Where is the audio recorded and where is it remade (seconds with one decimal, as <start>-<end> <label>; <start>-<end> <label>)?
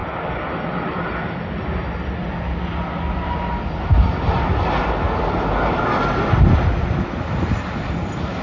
0.0-8.4 recorded